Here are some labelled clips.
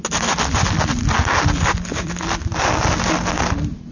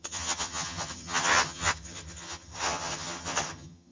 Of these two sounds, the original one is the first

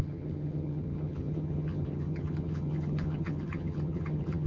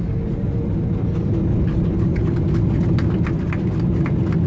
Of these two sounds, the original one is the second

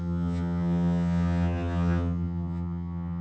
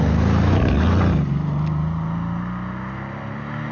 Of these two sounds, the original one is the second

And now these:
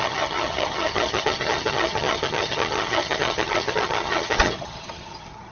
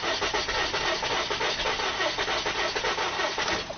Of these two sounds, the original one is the second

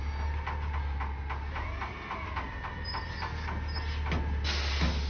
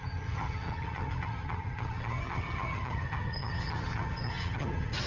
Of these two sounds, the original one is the first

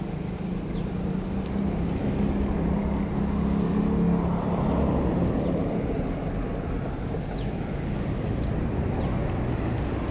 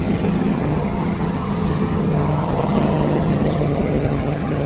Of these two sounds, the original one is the first